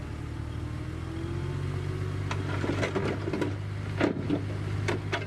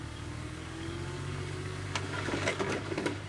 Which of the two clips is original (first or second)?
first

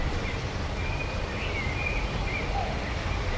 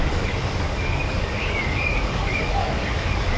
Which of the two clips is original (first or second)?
first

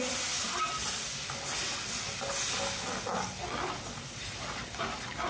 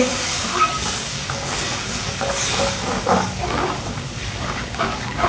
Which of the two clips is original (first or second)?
first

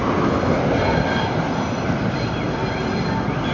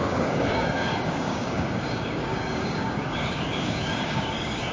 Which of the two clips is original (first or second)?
first